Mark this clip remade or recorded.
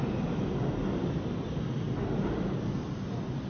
recorded